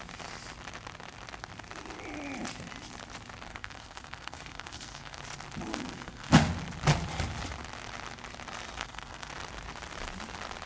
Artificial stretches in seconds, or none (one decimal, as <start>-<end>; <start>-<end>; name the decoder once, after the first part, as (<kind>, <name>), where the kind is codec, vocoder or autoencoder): 3.5-5.2 (codec, SNAC); 5.7-6.3; 8.8-9.3

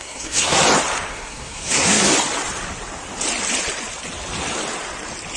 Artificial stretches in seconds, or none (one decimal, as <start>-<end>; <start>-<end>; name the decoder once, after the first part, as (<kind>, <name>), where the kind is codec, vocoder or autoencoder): 0.0-0.6 (codec, SNAC); 1.1-2.1

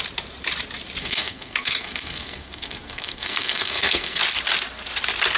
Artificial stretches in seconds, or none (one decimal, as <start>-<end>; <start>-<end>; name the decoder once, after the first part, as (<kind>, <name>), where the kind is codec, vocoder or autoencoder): 1.0-4.2 (codec, SNAC)

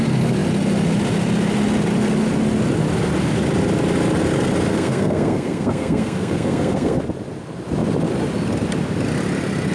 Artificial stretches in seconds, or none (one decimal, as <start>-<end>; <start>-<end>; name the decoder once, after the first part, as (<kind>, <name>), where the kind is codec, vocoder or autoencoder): 4.7-7.0 (codec, SNAC)

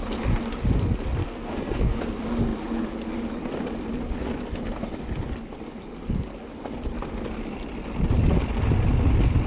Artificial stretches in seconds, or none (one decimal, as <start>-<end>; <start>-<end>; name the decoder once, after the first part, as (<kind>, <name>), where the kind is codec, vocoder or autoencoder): 1.2-2.0 (codec, SNAC)

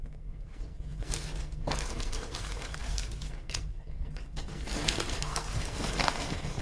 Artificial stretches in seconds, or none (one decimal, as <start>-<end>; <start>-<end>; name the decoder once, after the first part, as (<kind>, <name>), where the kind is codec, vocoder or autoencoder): 0.0-6.6 (codec, SNAC)

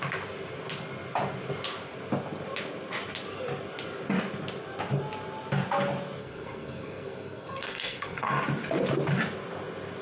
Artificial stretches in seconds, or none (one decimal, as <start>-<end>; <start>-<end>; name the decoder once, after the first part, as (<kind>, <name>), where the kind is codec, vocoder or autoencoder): 6.2-8.4 (codec, SNAC)